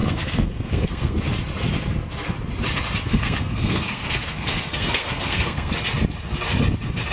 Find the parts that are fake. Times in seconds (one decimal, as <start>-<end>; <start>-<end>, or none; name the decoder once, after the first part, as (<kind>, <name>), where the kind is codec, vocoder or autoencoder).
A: 0.0-1.2 (codec, SNAC); 3.1-5.7